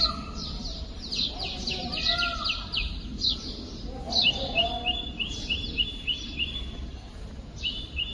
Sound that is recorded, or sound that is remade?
recorded